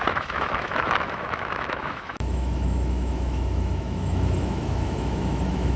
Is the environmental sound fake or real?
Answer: fake